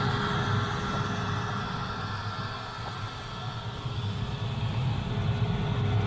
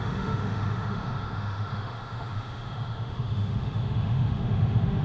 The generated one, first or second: second